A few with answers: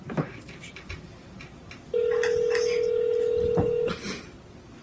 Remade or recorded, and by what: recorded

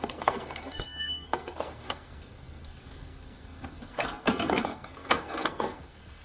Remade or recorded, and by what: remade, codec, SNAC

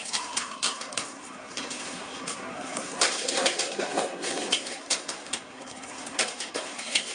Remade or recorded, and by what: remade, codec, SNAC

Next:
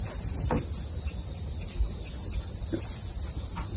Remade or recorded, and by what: recorded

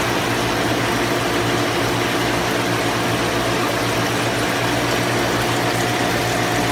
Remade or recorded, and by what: recorded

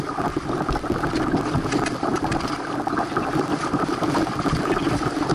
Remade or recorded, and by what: recorded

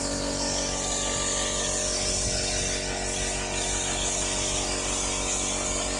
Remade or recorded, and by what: recorded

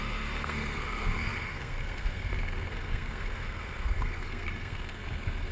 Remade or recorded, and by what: remade, codec, SNAC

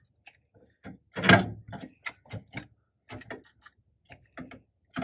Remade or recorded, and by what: recorded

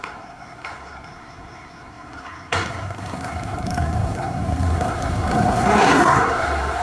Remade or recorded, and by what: remade, codec, SNAC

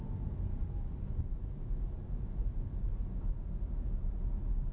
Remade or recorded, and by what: recorded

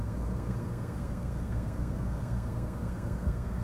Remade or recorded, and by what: remade, codec, SNAC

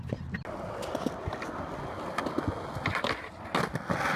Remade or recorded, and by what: recorded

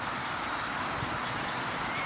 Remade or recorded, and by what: recorded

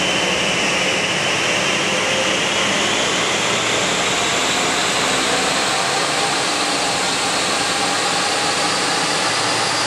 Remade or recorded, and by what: recorded